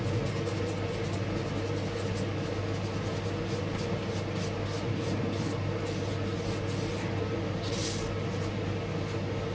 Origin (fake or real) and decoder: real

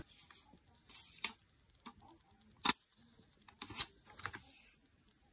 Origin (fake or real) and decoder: real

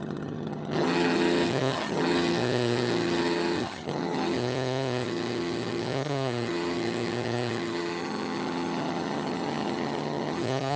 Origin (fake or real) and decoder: fake, vocoder, HiFi-GAN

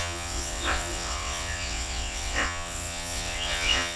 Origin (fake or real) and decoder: fake, vocoder, WaveNeXt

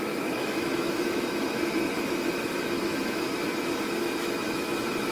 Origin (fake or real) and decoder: fake, autoencoder, DAC-VAE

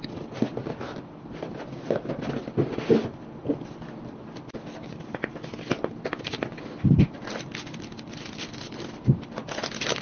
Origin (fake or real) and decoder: real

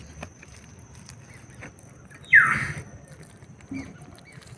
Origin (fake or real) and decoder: real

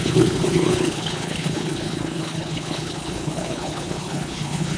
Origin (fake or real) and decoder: fake, codec, HILCodec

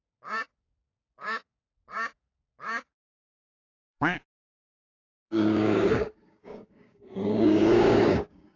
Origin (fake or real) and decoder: fake, codec, DAC